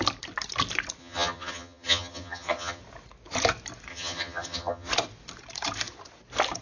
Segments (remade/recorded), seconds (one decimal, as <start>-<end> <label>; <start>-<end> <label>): 0.0-1.0 recorded; 1.0-2.8 remade; 2.8-3.9 recorded; 3.9-4.9 remade; 4.9-6.6 recorded

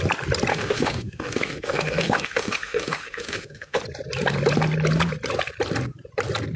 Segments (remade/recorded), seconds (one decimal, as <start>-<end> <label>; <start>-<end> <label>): 0.0-0.5 recorded; 0.5-3.8 remade; 3.8-6.6 recorded

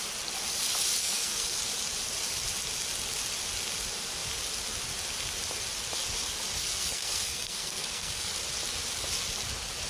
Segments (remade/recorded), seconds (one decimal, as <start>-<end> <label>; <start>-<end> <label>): 0.0-1.0 recorded; 1.0-1.6 remade; 1.6-6.6 recorded; 6.6-8.3 remade; 8.3-9.9 recorded

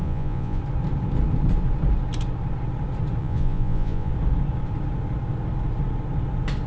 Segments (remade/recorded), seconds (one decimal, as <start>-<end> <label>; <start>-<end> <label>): 0.0-0.6 remade; 0.6-3.2 recorded; 3.2-4.1 remade; 4.1-6.7 recorded

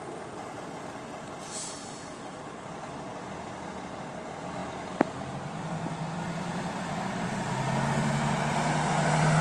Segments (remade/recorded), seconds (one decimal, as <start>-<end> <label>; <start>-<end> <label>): 0.0-9.4 recorded